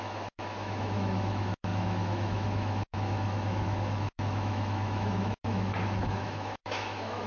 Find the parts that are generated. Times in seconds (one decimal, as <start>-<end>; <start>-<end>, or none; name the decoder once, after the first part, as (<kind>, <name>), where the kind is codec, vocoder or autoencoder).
0.0-7.3 (autoencoder, DAC-VAE)

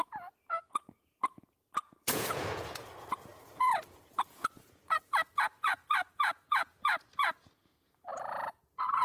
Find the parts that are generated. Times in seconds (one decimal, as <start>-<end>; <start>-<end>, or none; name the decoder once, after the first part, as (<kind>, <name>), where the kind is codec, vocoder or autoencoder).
0.0-9.0 (vocoder, Vocos)

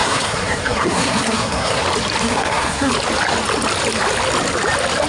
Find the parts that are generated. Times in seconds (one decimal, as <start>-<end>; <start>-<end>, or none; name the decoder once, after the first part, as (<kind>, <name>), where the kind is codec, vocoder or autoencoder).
0.0-1.8 (codec, SNAC); 2.2-2.9